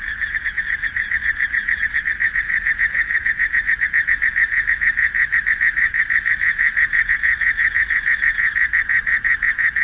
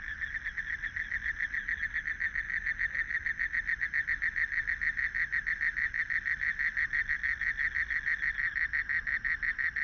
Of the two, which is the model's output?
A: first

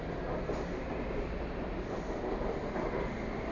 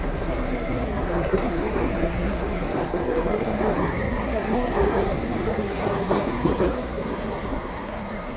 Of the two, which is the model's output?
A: second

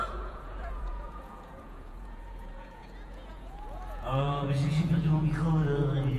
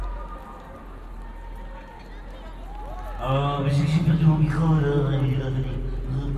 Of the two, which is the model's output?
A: first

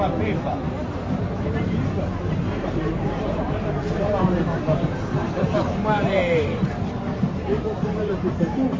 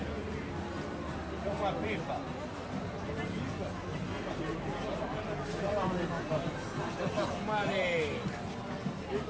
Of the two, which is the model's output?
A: first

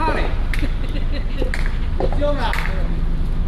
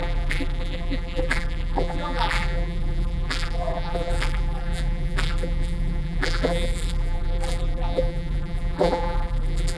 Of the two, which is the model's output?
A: second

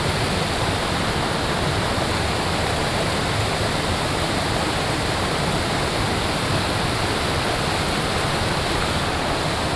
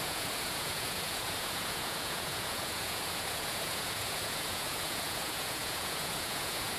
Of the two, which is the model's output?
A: second